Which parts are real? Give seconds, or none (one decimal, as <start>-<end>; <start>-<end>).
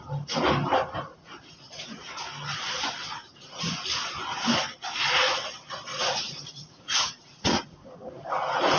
0.0-1.1; 2.2-3.2; 3.7-5.9